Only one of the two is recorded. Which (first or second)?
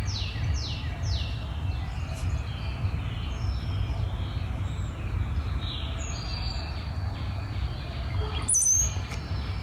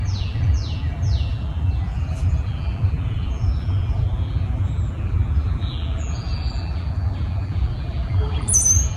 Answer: first